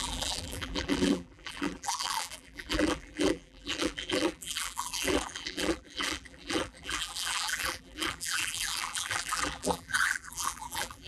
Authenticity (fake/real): fake